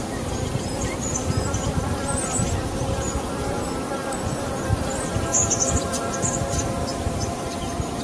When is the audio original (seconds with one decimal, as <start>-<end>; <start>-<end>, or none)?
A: 0.0-0.8; 1.7-6.8